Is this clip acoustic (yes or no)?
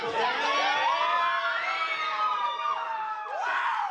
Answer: yes